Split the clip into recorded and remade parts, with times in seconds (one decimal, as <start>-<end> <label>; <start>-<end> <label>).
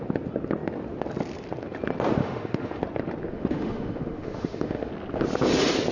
0.0-2.2 recorded; 2.2-2.8 remade; 2.8-3.3 recorded; 3.3-4.9 remade; 4.9-5.9 recorded